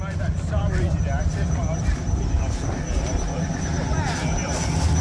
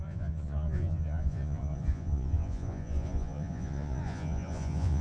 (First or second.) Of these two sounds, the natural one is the first